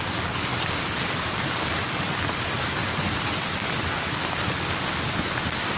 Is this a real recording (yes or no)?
yes